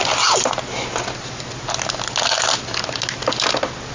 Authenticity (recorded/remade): recorded